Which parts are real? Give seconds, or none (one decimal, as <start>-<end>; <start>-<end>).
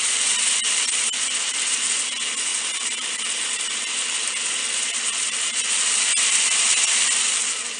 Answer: 0.0-7.8